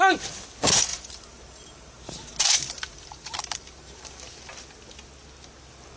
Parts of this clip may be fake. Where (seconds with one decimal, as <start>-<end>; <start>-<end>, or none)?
0.9-4.5